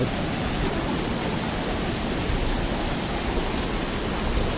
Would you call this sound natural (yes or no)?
yes